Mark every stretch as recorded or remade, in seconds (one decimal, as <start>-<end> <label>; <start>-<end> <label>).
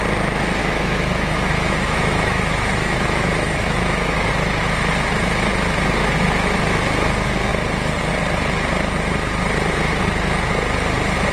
0.0-0.6 recorded; 0.6-4.3 remade; 4.3-6.0 recorded; 6.0-6.6 remade; 6.6-11.3 recorded